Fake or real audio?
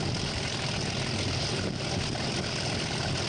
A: fake